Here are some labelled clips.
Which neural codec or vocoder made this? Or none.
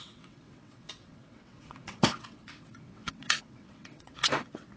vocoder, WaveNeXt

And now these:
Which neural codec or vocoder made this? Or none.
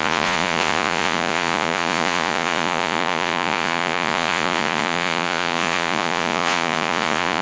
vocoder, Vocos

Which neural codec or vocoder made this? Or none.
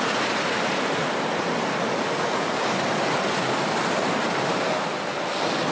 none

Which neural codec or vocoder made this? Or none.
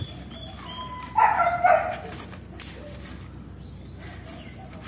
none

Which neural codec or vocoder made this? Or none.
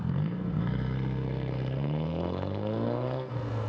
codec, SNAC